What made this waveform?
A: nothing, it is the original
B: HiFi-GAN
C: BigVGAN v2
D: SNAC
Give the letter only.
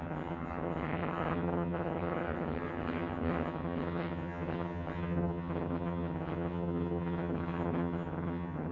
B